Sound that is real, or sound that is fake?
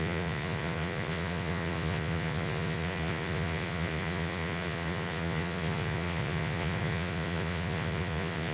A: fake